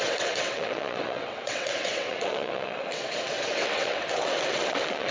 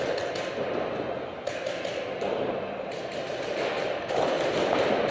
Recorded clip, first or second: second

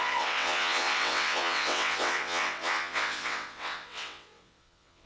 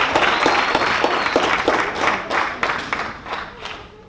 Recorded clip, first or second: second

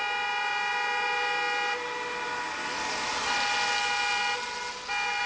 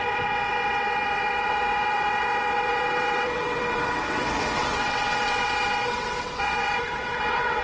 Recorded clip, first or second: first